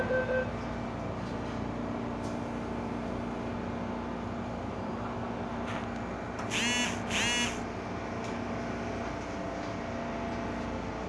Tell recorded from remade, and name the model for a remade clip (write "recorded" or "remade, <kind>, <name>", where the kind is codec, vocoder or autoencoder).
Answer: recorded